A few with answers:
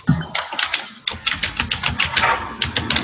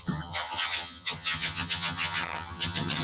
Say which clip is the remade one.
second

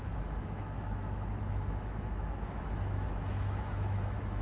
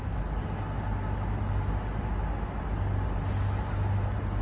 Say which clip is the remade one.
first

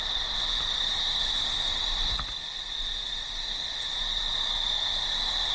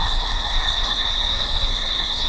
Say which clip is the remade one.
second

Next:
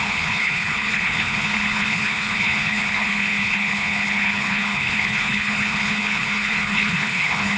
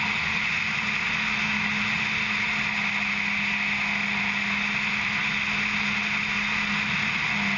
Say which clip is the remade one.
first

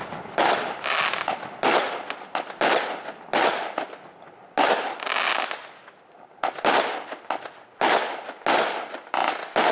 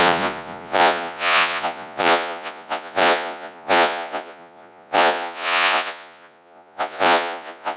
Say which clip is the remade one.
second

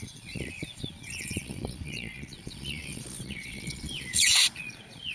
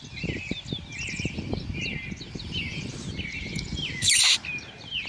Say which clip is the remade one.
first